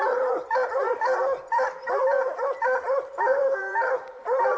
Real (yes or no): no